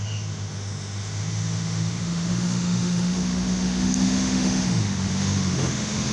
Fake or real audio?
fake